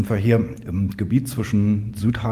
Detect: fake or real real